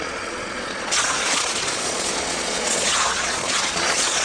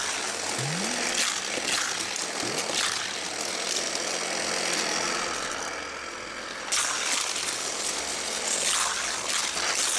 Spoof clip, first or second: first